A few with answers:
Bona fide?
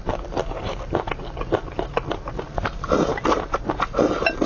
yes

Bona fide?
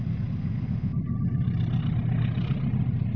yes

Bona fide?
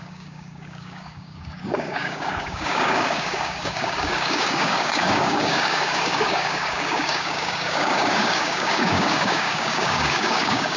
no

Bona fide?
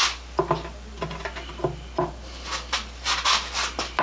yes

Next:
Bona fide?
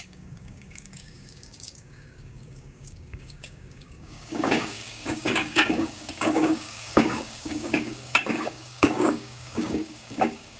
no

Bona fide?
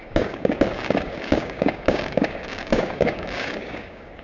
no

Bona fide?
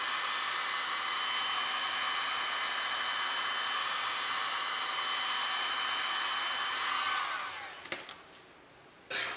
yes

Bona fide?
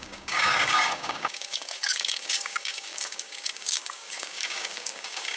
no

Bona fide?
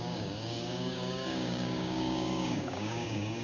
no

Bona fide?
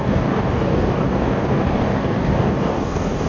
no